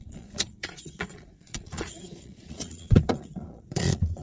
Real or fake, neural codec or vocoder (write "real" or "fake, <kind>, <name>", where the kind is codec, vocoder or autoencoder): fake, vocoder, Vocos